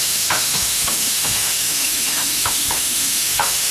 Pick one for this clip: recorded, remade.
remade